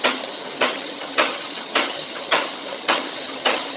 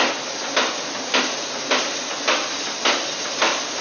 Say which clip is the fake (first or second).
first